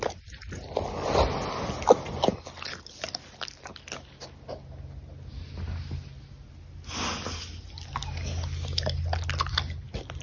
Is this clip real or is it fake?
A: real